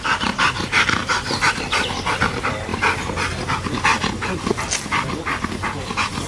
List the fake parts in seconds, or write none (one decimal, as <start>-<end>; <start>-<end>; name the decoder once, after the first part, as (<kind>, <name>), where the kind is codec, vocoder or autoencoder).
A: 1.0-1.5 (vocoder, BigVGAN v2); 3.9-5.2

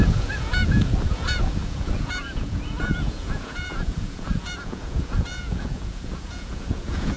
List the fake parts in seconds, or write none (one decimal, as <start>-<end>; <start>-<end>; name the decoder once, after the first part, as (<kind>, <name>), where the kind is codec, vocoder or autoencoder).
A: 0.0-7.2 (vocoder, Vocos)

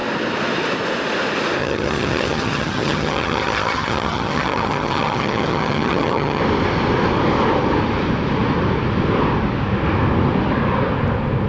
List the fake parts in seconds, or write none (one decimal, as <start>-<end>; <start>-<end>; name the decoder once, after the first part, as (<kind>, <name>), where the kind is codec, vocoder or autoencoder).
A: 1.6-6.4 (vocoder, HiFi-GAN)